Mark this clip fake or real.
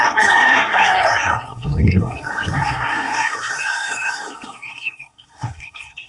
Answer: fake